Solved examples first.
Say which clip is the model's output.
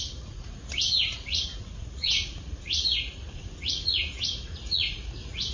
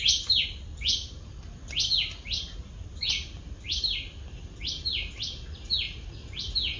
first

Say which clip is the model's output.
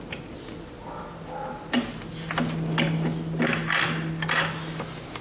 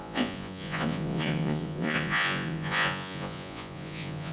second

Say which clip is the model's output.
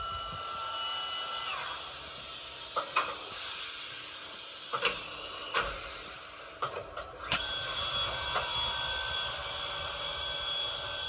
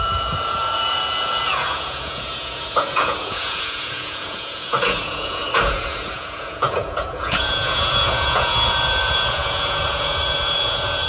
second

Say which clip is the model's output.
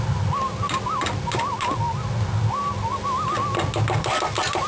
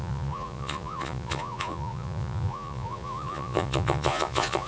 second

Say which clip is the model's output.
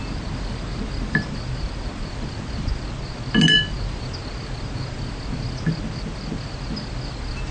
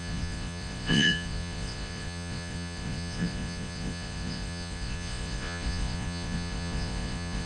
second